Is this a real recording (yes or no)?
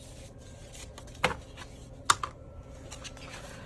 yes